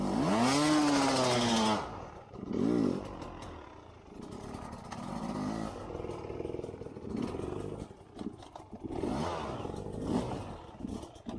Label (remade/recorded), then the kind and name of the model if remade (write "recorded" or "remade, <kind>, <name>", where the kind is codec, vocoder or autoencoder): recorded